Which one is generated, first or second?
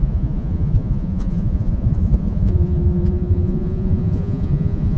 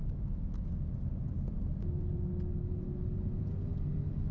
first